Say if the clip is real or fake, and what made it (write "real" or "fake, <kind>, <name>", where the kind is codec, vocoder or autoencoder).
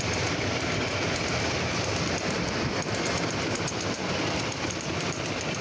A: fake, vocoder, BigVGAN v2